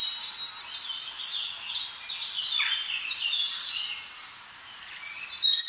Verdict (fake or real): real